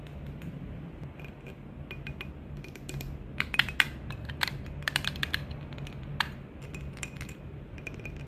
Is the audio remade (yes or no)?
no